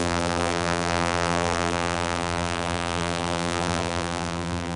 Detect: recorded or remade remade